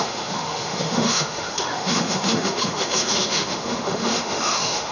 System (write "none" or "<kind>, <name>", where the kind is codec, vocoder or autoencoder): autoencoder, DAC-VAE